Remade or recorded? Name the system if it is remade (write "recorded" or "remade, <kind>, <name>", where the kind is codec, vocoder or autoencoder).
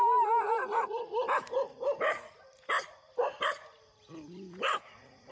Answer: recorded